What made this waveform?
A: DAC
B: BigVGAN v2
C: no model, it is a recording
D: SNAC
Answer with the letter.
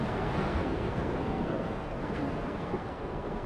D